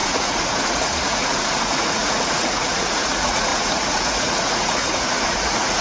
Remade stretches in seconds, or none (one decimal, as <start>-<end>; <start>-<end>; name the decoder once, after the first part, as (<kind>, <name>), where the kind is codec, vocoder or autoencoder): 0.0-5.8 (vocoder, Vocos)